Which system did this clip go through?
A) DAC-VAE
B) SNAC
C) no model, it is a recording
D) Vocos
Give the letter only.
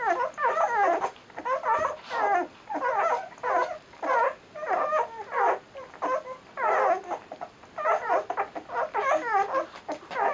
C